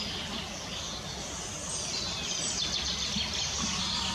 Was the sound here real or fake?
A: real